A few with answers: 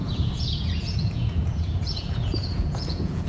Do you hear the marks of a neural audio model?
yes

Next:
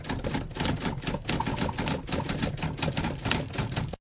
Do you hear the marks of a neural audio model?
no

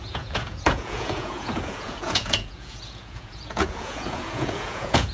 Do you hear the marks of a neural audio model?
yes